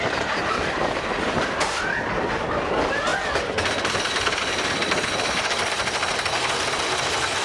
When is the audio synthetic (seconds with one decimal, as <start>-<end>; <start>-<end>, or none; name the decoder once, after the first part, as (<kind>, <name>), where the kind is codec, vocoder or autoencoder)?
none